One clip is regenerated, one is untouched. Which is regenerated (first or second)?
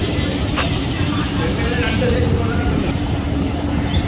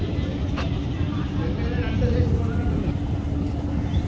first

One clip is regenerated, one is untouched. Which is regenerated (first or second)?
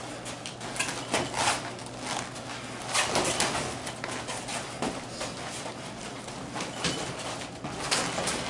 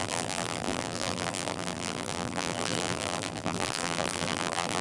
second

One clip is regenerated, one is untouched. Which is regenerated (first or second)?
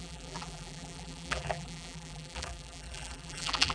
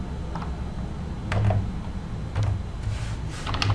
first